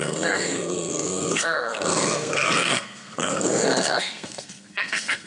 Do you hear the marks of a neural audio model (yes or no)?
yes